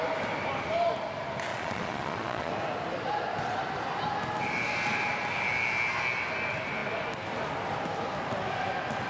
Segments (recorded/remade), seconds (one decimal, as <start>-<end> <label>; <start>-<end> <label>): 0.0-1.5 recorded; 1.5-2.5 remade; 2.5-9.1 recorded